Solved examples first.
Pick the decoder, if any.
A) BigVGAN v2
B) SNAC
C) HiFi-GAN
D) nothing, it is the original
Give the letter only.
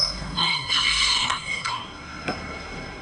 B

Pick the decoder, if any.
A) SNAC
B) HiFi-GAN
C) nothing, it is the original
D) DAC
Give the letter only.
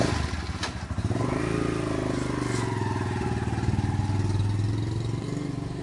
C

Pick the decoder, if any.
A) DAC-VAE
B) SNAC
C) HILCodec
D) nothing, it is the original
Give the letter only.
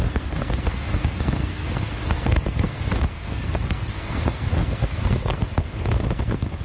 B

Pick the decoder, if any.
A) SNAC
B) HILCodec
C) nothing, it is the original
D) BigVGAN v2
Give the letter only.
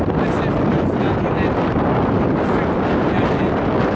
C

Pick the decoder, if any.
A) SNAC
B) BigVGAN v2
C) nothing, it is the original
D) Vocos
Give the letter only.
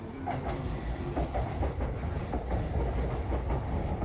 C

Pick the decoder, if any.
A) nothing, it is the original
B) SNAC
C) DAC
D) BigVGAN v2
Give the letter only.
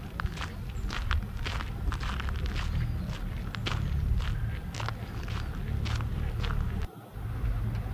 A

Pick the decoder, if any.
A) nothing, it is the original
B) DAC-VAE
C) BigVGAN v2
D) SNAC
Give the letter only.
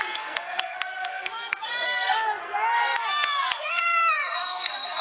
D